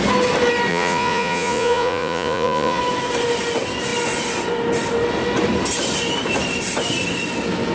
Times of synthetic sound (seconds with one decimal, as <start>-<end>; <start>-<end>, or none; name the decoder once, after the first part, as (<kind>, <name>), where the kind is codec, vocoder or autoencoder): 0.7-2.8 (vocoder, Vocos)